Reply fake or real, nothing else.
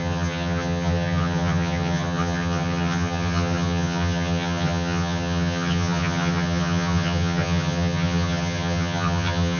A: fake